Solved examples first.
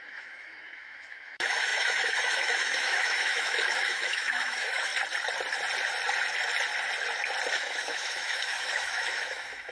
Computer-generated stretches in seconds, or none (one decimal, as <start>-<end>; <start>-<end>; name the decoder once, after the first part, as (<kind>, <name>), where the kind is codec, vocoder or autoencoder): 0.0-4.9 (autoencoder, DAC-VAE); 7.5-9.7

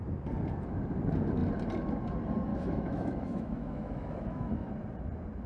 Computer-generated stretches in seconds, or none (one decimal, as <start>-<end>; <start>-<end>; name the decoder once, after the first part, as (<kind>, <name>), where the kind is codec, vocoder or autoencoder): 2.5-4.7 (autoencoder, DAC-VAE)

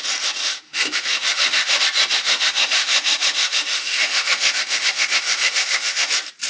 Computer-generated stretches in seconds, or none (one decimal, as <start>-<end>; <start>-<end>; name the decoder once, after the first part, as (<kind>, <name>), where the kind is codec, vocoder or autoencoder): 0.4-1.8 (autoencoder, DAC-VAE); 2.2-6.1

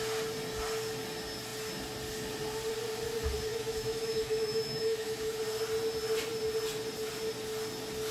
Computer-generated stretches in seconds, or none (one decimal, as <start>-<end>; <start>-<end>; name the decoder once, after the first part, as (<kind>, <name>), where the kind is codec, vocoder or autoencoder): 3.5-5.4 (autoencoder, DAC-VAE)

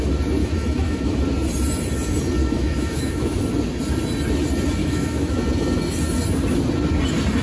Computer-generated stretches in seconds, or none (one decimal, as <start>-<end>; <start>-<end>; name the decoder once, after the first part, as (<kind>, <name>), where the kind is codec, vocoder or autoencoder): 0.4-1.2 (autoencoder, DAC-VAE); 2.4-3.4; 4.8-5.4